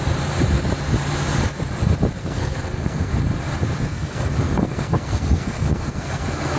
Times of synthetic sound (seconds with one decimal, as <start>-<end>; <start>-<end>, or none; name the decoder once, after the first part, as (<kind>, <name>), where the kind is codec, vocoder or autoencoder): 2.2-3.1 (codec, SNAC); 3.9-6.6